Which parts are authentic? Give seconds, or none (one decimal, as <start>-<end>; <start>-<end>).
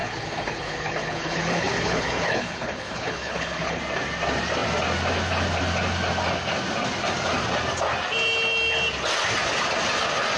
3.8-10.4